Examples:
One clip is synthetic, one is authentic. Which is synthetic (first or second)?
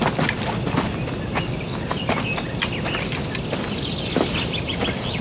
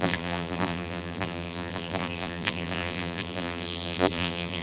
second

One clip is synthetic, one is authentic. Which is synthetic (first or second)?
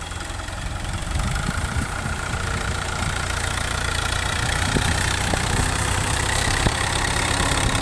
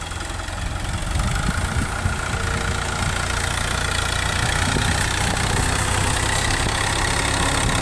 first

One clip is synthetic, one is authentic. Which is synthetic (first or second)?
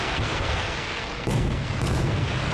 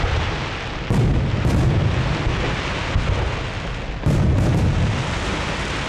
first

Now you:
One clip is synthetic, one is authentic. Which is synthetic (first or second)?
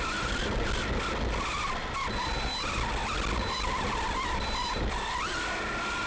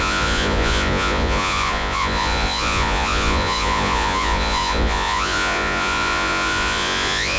second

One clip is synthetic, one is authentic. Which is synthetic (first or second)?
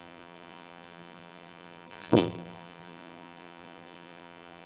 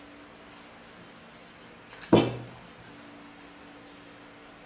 first